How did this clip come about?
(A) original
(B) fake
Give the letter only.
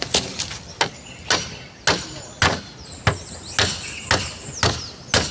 A